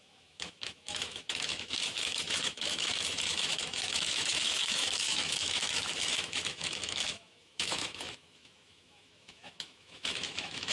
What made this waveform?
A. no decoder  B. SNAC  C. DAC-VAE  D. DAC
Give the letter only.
C